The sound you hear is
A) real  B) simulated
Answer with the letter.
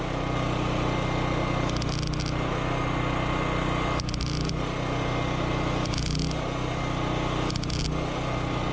A